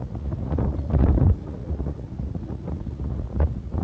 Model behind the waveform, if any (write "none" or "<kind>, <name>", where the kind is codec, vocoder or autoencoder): vocoder, Vocos